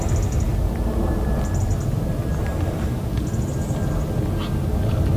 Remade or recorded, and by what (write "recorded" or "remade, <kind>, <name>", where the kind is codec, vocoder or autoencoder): recorded